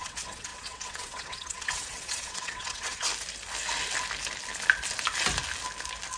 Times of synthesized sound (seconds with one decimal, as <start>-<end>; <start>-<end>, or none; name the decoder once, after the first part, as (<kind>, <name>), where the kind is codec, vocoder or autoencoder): 0.0-3.1 (vocoder, WaveNeXt)